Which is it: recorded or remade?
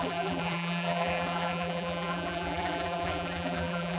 remade